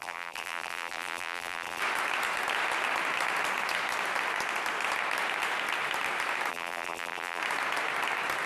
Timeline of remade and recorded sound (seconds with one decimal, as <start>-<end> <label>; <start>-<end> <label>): 0.0-1.8 remade; 1.8-6.5 recorded; 6.5-7.4 remade; 7.4-8.5 recorded